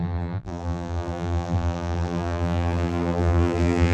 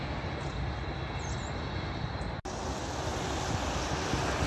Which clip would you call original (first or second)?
second